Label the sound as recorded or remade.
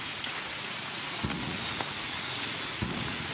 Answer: remade